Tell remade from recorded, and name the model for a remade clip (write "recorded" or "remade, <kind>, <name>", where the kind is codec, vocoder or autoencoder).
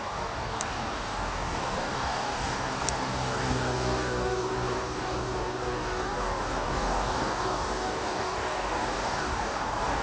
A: remade, codec, DAC